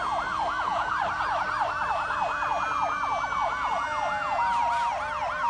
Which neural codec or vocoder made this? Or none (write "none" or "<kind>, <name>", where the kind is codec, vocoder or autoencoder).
none